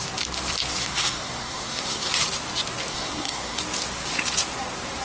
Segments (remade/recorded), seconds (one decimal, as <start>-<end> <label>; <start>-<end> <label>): 0.0-0.8 recorded; 0.8-2.1 remade; 2.1-2.9 recorded; 2.9-3.6 remade; 3.6-5.0 recorded